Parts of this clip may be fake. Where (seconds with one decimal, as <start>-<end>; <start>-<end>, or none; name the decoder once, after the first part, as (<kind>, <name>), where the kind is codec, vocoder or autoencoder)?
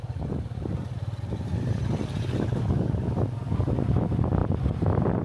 none